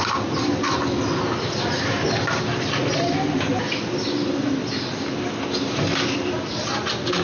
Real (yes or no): yes